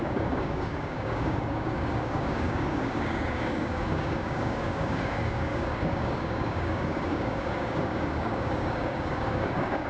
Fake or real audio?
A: fake